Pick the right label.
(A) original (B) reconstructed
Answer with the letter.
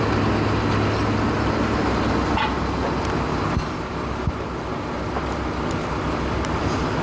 A